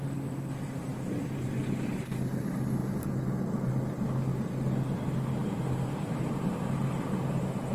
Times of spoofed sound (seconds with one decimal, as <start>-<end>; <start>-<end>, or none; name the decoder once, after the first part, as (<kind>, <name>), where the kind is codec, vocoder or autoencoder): 0.9-1.5 (vocoder, BigVGAN v2); 5.4-7.7